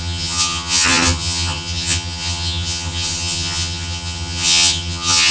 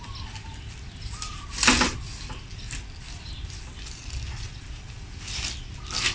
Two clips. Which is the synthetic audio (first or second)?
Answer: first